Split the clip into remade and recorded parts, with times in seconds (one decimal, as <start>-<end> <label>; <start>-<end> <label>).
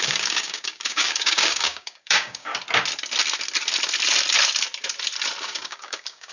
0.0-2.5 remade; 2.5-5.4 recorded; 5.4-6.3 remade